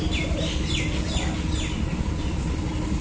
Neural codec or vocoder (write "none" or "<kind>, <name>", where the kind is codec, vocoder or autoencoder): none